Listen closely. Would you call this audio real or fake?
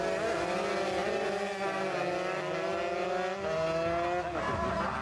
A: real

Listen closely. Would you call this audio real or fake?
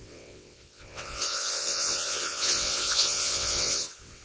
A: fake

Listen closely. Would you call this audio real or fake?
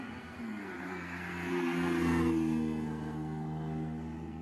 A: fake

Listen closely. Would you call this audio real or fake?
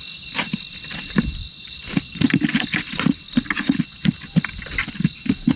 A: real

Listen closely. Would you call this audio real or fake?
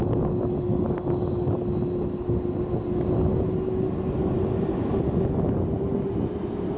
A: real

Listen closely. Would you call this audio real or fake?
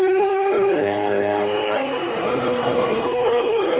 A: fake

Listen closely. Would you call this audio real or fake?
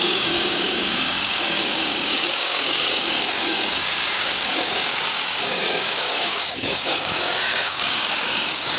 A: fake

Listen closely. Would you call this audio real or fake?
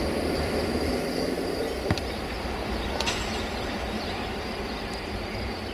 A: fake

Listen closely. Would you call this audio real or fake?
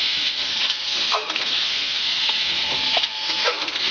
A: fake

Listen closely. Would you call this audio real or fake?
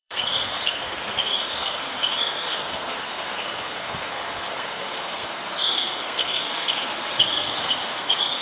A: fake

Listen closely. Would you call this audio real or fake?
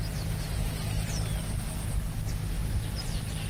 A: real